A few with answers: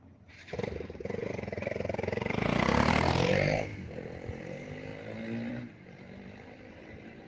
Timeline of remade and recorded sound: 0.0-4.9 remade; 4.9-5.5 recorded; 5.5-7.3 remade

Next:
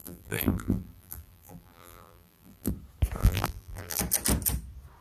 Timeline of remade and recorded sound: 0.0-2.7 remade; 2.7-3.2 recorded; 3.2-4.0 remade; 4.0-5.0 recorded

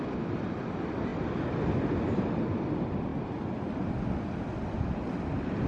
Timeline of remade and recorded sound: 0.0-5.7 recorded

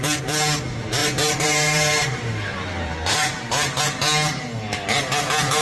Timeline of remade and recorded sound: 0.0-1.0 recorded; 1.0-3.8 remade; 3.8-5.6 recorded

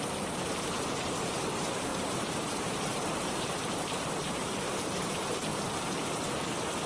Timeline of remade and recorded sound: 0.0-5.5 remade; 5.5-6.5 recorded; 6.5-6.9 remade